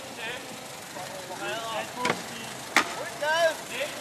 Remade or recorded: recorded